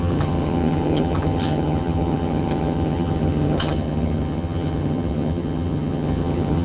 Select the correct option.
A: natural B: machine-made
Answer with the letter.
B